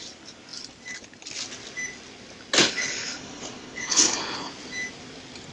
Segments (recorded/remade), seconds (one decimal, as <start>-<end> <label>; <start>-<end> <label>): 0.0-2.6 recorded; 2.6-4.5 remade; 4.5-5.5 recorded